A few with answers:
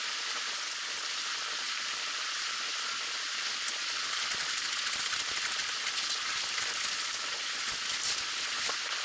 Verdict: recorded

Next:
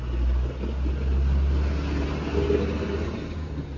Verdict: recorded